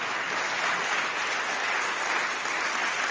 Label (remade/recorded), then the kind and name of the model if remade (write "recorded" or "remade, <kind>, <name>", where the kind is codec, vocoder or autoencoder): recorded